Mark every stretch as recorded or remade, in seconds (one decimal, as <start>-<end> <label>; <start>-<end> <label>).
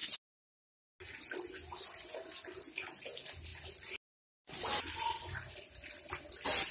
0.0-6.7 recorded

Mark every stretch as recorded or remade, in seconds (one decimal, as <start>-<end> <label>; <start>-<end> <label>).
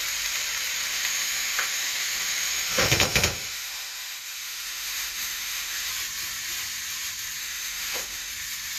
0.0-0.9 recorded; 0.9-5.9 remade; 5.9-7.4 recorded; 7.4-8.3 remade; 8.3-8.8 recorded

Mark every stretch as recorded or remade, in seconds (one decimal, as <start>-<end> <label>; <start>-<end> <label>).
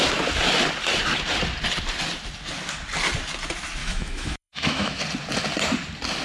0.0-3.8 recorded; 3.8-5.0 remade; 5.0-6.2 recorded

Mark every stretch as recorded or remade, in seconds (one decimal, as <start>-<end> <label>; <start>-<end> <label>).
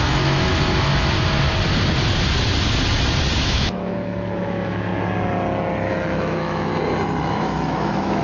0.0-0.5 remade; 0.5-3.4 recorded; 3.4-4.9 remade; 4.9-5.9 recorded; 5.9-6.7 remade; 6.7-7.2 recorded; 7.2-8.2 remade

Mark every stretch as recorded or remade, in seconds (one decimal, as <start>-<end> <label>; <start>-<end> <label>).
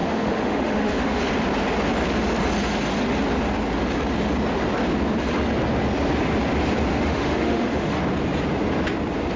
0.0-1.2 remade; 1.2-6.9 recorded; 6.9-8.0 remade; 8.0-9.4 recorded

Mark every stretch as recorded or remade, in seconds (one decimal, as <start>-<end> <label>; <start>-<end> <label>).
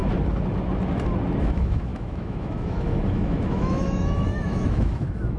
0.0-1.4 recorded; 1.4-5.4 remade